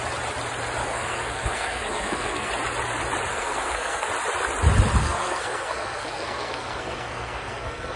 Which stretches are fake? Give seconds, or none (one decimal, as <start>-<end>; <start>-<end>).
0.8-2.5; 3.3-4.1; 5.0-8.0